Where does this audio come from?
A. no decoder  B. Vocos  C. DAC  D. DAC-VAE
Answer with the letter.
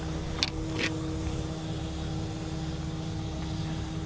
A